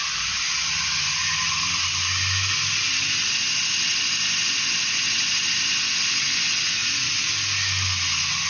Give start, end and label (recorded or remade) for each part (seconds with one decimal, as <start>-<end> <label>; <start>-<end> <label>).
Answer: 0.0-6.8 recorded; 6.8-7.3 remade; 7.3-8.5 recorded